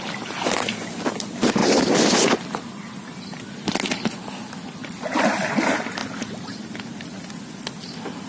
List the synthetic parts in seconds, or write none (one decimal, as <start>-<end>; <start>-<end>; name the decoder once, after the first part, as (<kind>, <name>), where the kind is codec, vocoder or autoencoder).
none